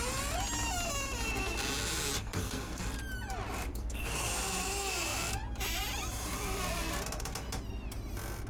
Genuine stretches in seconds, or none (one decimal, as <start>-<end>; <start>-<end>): 0.0-2.2; 2.8-3.7; 4.3-8.5

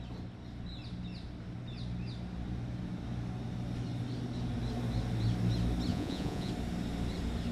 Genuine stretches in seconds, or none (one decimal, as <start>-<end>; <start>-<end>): 0.0-5.9; 6.5-7.5

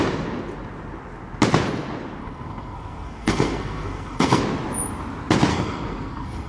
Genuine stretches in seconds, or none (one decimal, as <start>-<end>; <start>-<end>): 0.0-2.2; 4.4-5.5

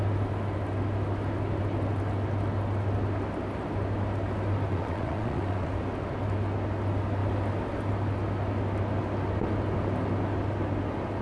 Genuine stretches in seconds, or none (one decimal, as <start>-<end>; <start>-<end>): 0.0-4.7; 5.7-11.2

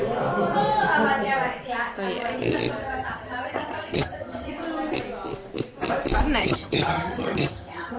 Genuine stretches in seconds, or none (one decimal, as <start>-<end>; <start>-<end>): 0.0-2.8; 4.5-6.4